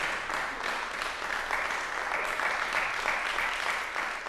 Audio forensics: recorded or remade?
recorded